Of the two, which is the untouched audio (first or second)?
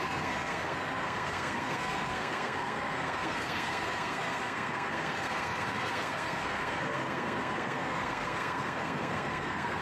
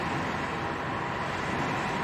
second